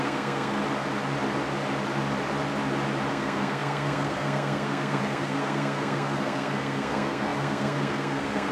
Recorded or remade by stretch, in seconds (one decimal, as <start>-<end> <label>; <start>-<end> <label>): 0.0-0.6 remade; 0.6-3.1 recorded; 3.1-8.5 remade